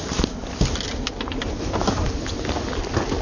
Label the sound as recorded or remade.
recorded